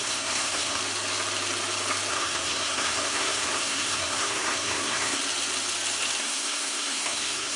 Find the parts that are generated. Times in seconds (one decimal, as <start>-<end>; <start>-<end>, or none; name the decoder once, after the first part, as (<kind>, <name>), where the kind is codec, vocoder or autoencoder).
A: 0.0-0.8 (codec, SNAC); 2.1-5.2; 6.2-7.6